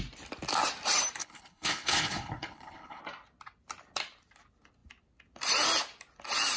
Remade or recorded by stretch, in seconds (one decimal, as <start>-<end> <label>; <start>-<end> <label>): 0.0-1.2 recorded; 1.2-3.0 remade; 3.0-6.6 recorded